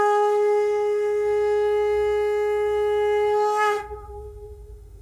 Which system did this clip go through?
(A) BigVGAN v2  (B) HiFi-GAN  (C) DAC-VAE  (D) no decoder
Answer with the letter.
C